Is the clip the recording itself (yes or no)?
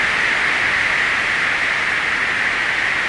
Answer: yes